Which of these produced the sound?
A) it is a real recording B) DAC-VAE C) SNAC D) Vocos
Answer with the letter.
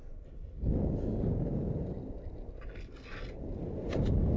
A